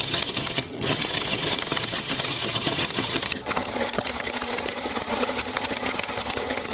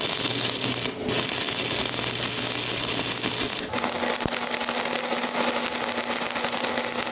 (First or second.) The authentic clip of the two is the second